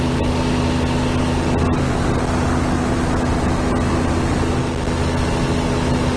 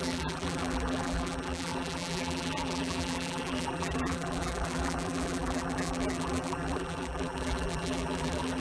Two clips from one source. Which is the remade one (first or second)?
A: second